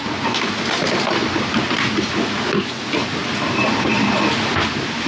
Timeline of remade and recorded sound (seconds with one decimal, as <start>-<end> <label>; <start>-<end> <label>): 0.0-5.1 recorded